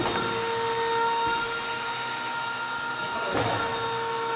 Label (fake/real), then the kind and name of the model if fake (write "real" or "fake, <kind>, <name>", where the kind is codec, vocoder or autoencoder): real